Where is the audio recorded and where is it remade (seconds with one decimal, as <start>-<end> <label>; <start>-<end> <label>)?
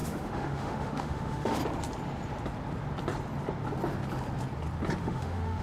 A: 0.0-1.6 remade; 1.6-5.0 recorded; 5.0-5.6 remade